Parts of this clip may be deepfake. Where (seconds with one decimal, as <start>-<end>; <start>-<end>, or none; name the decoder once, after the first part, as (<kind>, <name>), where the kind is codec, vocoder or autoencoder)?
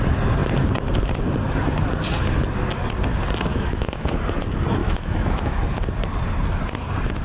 3.5-4.2 (autoencoder, DAC-VAE); 4.8-5.6